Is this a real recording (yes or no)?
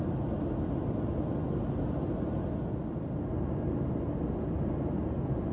yes